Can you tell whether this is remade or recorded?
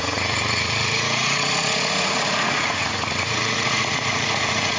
remade